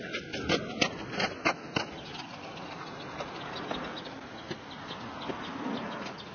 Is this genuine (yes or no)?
yes